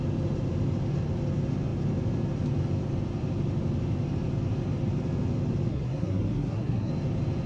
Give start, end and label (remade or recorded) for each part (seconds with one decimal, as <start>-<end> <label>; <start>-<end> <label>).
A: 0.0-5.7 recorded; 5.7-6.9 remade; 6.9-7.5 recorded